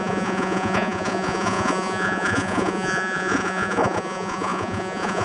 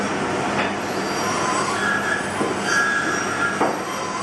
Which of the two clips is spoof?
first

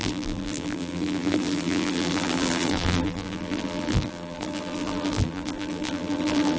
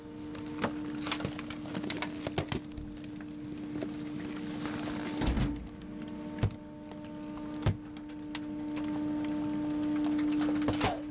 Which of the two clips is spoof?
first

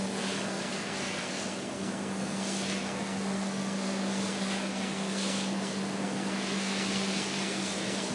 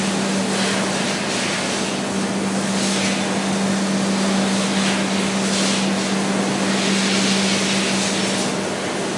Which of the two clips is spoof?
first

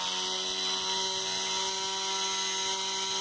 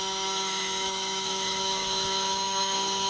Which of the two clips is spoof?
second